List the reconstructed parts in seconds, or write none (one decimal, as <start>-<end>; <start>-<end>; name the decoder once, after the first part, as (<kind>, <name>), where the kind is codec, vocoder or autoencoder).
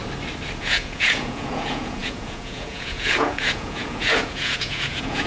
0.6-5.3 (vocoder, Vocos)